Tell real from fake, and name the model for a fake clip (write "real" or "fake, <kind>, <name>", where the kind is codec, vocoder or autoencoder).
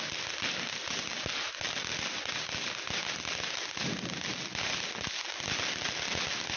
real